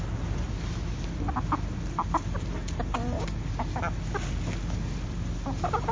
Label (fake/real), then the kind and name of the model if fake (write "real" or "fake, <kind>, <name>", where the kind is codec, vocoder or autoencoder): real